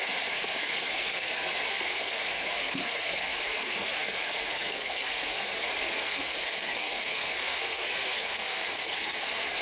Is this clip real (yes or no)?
no